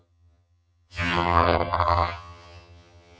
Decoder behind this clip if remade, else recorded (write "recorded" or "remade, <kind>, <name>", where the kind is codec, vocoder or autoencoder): remade, vocoder, HiFi-GAN